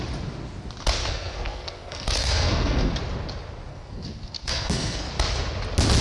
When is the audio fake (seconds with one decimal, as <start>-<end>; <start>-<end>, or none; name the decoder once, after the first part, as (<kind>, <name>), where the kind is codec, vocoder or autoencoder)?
1.0-2.9 (codec, SNAC); 3.7-5.1